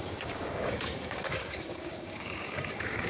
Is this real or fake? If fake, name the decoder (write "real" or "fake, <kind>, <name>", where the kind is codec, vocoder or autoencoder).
fake, codec, DAC